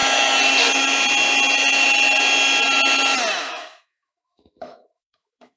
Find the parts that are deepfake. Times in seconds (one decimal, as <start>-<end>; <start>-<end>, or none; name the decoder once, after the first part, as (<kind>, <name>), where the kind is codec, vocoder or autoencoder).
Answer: 3.4-5.6 (autoencoder, DAC-VAE)